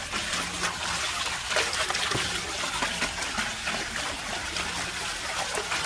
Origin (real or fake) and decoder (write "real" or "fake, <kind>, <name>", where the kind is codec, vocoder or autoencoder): real